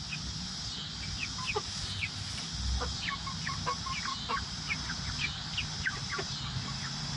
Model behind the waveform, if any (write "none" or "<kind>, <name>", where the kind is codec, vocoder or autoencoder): none